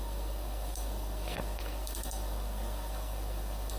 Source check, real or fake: fake